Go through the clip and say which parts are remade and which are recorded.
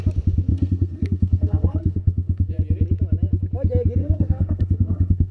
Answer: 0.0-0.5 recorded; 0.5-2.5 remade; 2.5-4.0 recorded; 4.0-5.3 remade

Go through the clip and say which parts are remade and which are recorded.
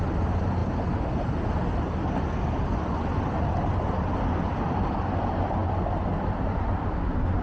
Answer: 0.0-7.4 recorded